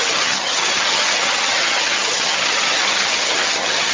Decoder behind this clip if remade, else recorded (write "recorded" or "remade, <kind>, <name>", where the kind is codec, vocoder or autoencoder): remade, vocoder, HiFi-GAN